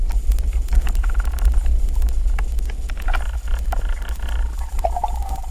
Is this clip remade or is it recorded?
recorded